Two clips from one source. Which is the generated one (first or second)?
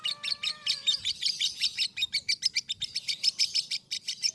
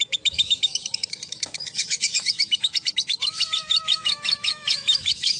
second